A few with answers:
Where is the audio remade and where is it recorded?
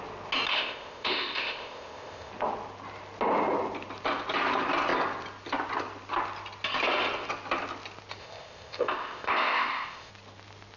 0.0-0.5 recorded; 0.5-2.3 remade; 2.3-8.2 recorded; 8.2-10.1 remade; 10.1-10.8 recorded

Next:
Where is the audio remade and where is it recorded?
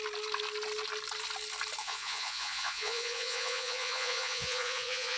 0.0-1.8 recorded; 1.8-5.2 remade